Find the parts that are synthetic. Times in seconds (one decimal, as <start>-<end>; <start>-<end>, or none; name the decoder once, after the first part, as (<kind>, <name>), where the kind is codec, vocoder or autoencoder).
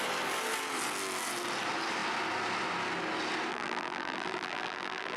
3.5-5.2 (vocoder, BigVGAN v2)